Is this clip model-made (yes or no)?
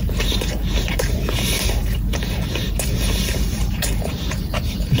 yes